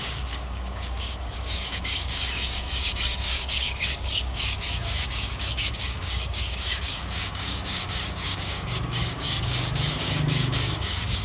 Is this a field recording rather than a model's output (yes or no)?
no